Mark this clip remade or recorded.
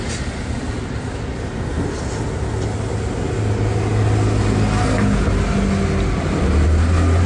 recorded